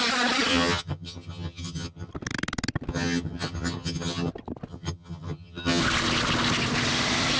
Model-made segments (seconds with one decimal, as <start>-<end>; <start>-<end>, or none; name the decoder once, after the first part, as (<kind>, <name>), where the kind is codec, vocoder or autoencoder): 0.5-2.1 (vocoder, HiFi-GAN); 2.9-4.3; 4.7-5.8